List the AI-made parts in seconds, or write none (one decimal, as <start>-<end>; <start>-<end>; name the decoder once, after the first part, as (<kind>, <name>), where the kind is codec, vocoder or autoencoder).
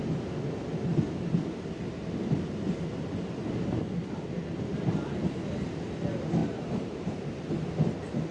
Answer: 6.4-7.5 (vocoder, BigVGAN v2)